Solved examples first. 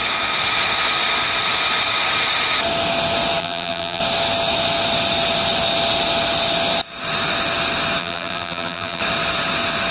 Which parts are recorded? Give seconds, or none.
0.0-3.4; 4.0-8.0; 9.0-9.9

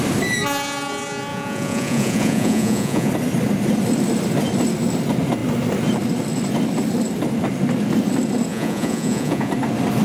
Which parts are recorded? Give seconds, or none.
0.0-1.3; 3.1-8.5; 9.5-10.0

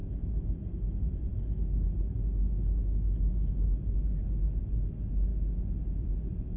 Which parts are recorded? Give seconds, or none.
0.5-6.6

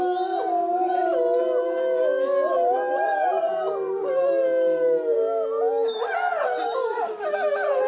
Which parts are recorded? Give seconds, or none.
0.0-7.9